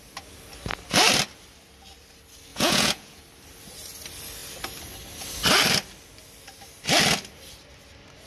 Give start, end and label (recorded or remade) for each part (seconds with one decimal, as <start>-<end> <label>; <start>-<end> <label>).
0.0-2.5 recorded; 2.5-3.2 remade; 3.2-8.3 recorded